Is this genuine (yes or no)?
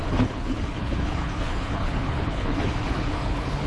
no